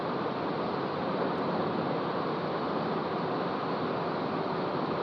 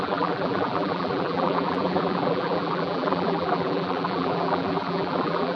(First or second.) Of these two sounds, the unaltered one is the first